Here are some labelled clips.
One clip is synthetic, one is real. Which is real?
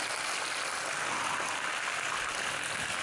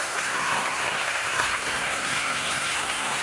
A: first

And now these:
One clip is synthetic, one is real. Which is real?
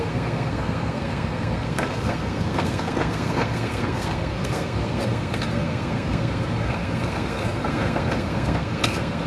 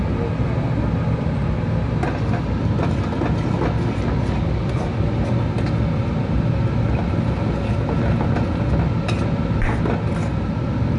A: second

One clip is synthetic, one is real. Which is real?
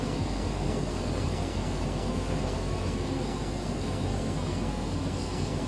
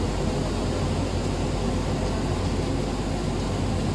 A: second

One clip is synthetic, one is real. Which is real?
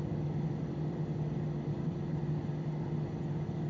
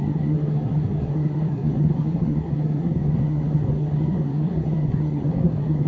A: first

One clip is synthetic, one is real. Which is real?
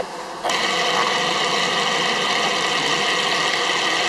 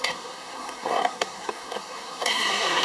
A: first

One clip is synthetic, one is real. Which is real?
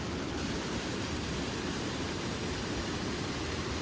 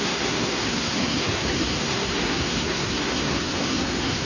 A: first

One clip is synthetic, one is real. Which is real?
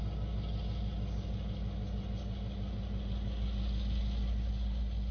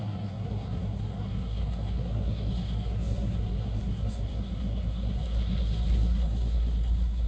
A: first